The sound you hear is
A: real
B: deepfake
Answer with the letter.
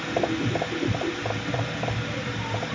A